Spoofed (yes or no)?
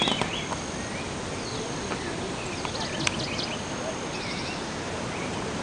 no